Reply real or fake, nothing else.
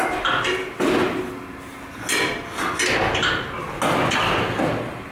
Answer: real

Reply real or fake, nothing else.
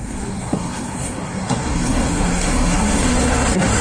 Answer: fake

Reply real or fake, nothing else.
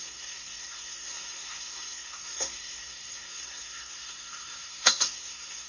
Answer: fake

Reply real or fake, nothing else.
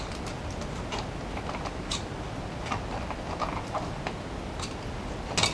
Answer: real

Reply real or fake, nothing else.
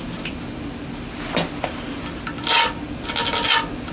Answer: real